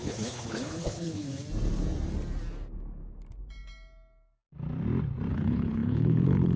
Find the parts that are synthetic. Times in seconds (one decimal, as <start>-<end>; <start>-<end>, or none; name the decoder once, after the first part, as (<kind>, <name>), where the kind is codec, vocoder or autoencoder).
0.0-1.3 (codec, HILCodec); 5.3-6.6